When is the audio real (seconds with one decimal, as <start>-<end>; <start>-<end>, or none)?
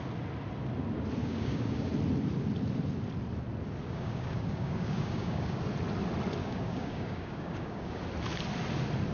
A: 0.0-1.2; 1.9-3.8; 5.6-6.4; 8.0-9.1